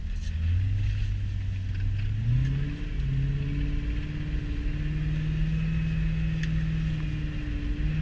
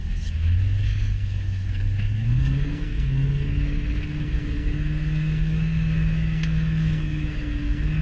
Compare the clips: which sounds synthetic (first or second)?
second